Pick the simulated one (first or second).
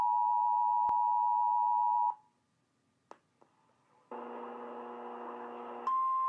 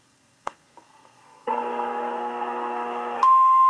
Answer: second